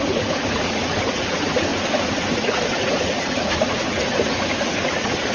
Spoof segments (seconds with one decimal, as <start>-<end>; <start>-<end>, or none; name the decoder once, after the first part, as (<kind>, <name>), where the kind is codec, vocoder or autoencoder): 0.0-5.3 (vocoder, Vocos)